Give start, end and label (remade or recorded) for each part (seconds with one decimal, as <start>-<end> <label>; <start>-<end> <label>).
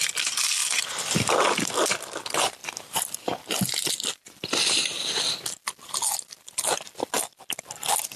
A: 0.0-0.6 remade; 0.6-1.7 recorded; 1.7-8.2 remade